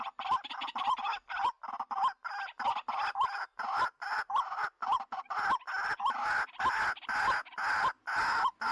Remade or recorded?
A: recorded